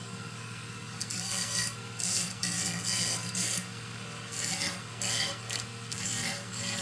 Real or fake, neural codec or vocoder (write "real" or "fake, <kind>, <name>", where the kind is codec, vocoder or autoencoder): fake, codec, SNAC